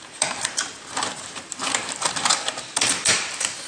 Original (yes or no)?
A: no